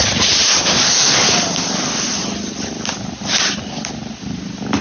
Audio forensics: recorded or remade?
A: recorded